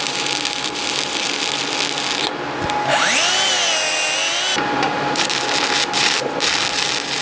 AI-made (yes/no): no